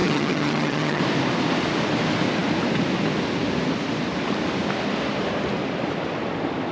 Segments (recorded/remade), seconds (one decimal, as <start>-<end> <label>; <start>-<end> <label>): 0.0-1.0 remade; 1.0-6.7 recorded